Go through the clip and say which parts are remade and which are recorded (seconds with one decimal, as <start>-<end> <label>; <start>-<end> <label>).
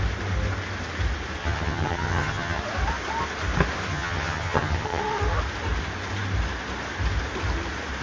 0.0-1.4 recorded; 1.4-2.6 remade; 2.6-3.9 recorded; 3.9-5.0 remade; 5.0-8.0 recorded